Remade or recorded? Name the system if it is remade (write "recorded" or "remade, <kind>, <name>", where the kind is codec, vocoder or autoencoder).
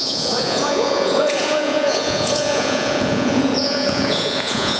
remade, vocoder, Vocos